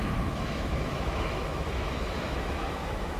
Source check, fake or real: fake